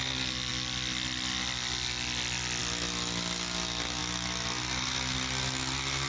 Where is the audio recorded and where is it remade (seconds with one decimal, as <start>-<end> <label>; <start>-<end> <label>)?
0.0-6.1 recorded